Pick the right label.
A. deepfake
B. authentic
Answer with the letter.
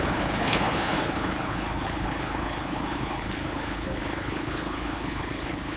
A